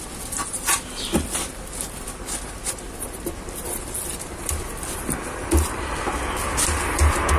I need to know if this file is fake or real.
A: real